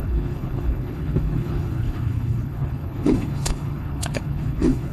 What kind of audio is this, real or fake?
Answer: fake